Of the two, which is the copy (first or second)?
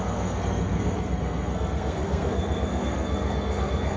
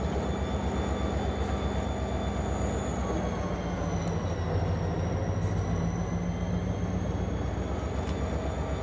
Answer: first